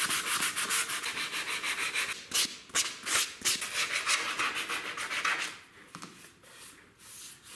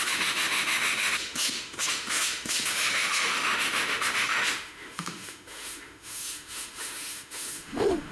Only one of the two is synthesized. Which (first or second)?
second